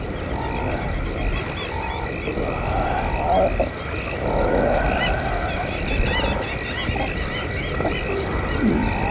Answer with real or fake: real